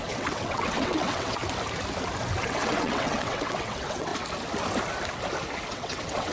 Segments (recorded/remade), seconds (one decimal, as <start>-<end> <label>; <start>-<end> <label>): 0.0-1.4 remade; 1.4-2.4 recorded; 2.4-4.1 remade; 4.1-5.7 recorded; 5.7-6.3 remade